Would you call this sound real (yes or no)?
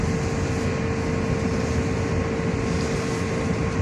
yes